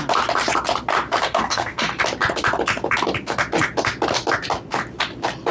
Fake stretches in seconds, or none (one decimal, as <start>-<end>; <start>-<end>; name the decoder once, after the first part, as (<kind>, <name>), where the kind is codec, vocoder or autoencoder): 1.2-1.8 (codec, SNAC)